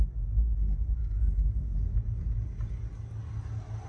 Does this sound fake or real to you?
real